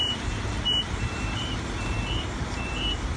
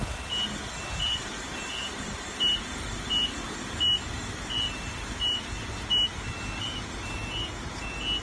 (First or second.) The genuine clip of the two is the second